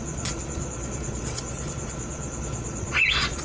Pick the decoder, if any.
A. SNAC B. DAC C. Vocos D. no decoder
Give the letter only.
C